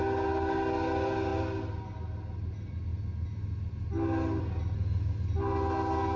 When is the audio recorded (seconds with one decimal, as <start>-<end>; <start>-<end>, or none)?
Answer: 0.0-6.2